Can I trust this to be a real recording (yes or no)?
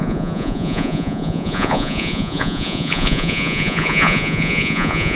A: no